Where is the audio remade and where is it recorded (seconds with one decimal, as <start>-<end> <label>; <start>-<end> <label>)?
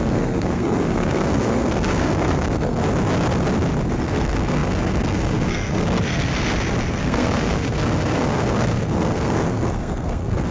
0.0-2.8 remade; 2.8-4.0 recorded; 4.0-6.3 remade; 6.3-6.9 recorded; 6.9-10.5 remade